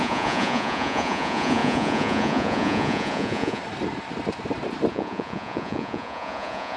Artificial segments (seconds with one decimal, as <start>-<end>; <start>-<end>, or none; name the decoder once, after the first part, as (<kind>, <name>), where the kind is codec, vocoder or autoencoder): 0.0-3.6 (vocoder, Vocos); 4.9-6.8